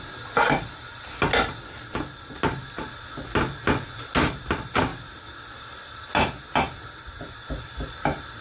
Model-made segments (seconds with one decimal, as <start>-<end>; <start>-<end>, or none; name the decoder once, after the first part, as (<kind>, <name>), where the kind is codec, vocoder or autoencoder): 4.9-8.0 (vocoder, BigVGAN v2)